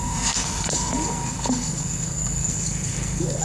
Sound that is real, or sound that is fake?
fake